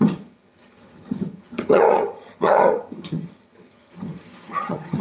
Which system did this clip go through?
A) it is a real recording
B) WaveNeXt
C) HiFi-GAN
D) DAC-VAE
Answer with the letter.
C